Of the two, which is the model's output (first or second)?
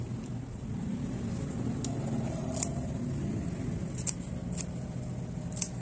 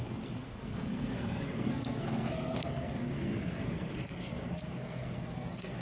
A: second